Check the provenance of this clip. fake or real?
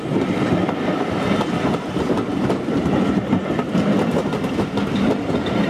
real